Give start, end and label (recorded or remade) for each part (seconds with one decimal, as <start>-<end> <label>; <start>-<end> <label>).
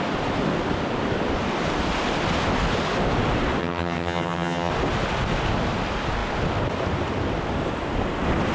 0.0-3.6 recorded; 3.6-4.7 remade; 4.7-8.5 recorded